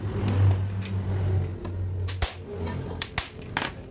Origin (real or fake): real